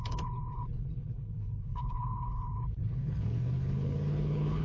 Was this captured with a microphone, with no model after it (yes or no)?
no